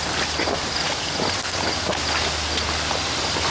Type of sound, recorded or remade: recorded